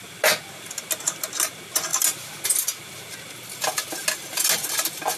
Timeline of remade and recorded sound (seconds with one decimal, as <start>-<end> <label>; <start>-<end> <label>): 0.0-5.2 recorded